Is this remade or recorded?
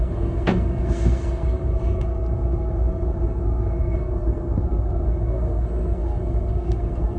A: remade